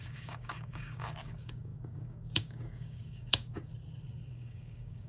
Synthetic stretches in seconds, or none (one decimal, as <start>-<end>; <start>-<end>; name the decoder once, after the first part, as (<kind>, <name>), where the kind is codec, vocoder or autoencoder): 0.0-3.7 (codec, DAC); 4.3-5.1